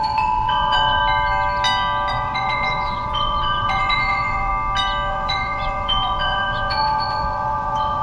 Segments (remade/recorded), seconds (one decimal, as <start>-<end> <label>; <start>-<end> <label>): 0.0-1.0 remade; 1.0-2.1 recorded; 2.1-4.5 remade; 4.5-5.1 recorded; 5.1-8.0 remade